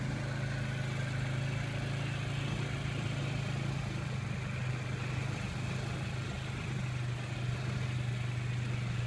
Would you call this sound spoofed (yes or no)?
no